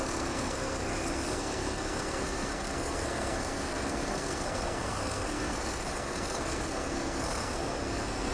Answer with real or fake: fake